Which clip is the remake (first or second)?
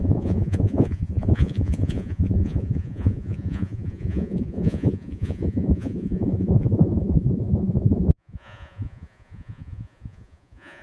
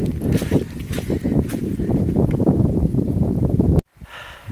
first